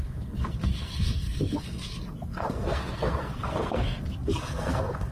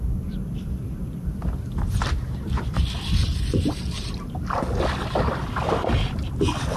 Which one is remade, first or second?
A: first